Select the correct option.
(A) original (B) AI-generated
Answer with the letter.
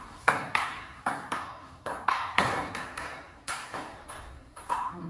B